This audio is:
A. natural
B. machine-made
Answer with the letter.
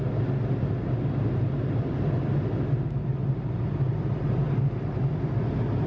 A